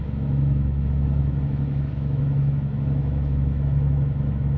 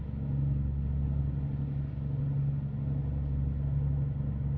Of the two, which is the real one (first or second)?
second